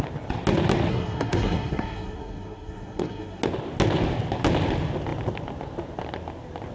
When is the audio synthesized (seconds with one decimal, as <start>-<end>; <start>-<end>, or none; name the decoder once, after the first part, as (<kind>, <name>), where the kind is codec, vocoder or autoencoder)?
0.9-3.4 (codec, SNAC)